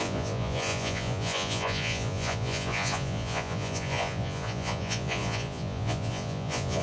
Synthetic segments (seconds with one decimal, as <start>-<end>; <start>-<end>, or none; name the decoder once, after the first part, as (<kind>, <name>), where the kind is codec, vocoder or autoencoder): 0.0-6.8 (vocoder, Vocos)